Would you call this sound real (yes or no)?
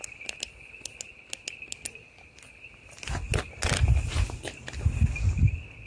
yes